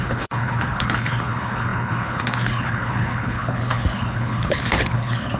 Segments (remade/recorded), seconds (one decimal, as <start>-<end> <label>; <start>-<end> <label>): 0.0-5.4 remade